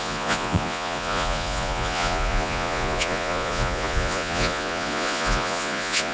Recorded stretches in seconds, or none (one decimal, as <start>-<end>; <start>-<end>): none